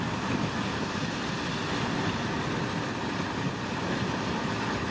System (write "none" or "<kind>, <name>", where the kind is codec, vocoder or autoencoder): vocoder, BigVGAN v2